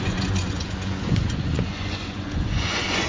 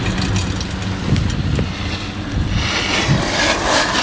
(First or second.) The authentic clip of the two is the second